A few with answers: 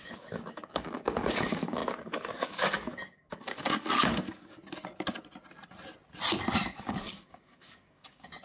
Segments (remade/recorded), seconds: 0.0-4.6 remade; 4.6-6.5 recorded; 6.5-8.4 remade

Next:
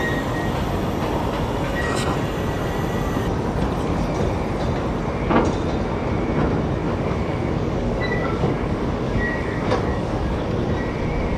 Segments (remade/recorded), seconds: 0.0-6.8 recorded; 6.8-10.4 remade; 10.4-11.4 recorded

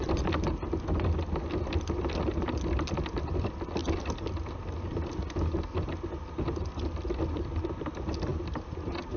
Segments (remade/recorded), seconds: 0.0-9.2 recorded

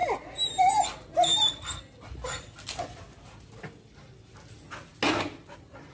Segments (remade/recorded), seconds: 0.0-5.9 recorded

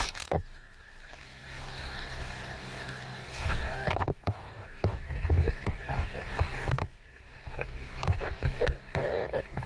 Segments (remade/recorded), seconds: 0.0-9.7 remade